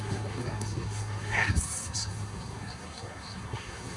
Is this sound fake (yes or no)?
yes